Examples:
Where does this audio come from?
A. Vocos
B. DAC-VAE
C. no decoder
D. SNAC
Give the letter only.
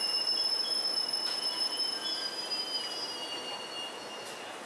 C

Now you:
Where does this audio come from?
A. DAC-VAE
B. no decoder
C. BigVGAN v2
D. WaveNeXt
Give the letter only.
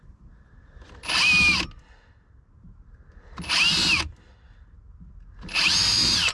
B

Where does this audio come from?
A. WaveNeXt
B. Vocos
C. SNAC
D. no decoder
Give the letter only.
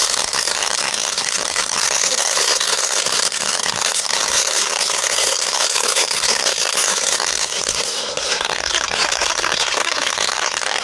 C